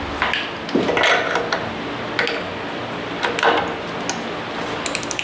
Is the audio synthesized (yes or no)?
no